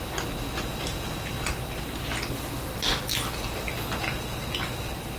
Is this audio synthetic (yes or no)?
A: no